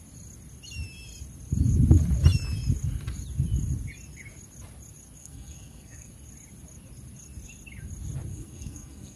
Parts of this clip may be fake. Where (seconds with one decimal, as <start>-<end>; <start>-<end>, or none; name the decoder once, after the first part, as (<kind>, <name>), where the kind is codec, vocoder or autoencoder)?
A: 5.2-6.1 (codec, SNAC); 8.3-9.2